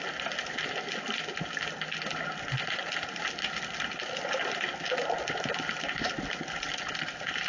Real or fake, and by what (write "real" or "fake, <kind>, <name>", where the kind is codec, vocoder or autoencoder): real